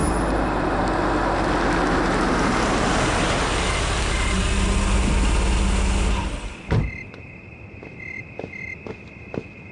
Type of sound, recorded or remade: recorded